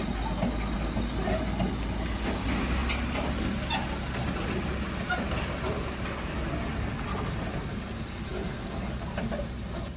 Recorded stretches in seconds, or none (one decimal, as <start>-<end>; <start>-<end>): 0.0-10.0